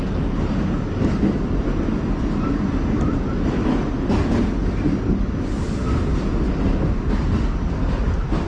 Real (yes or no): yes